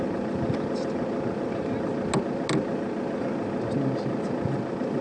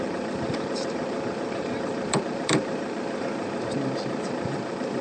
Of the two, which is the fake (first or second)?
second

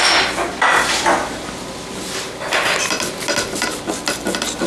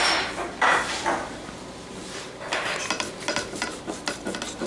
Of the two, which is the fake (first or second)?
second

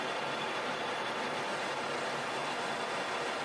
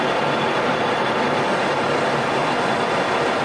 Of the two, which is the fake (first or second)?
second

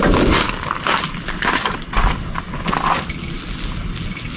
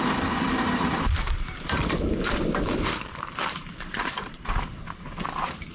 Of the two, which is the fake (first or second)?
second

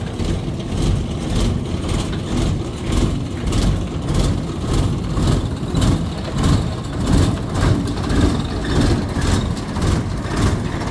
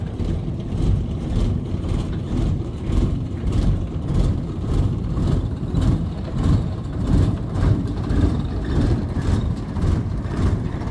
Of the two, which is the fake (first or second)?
second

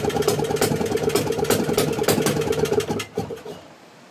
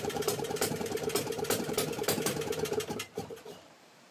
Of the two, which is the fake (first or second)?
second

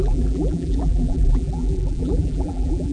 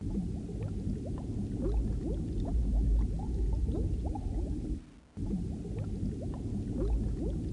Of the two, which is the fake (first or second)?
first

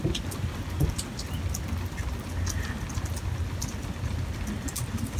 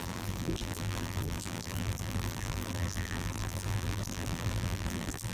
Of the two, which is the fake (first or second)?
second